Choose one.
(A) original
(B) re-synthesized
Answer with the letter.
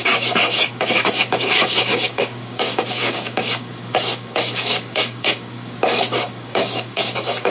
B